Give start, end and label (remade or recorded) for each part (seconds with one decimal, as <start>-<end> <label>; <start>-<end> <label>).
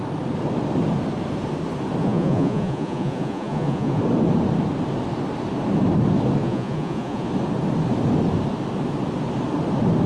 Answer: 0.0-2.0 recorded; 2.0-4.0 remade; 4.0-6.4 recorded; 6.4-7.3 remade; 7.3-10.1 recorded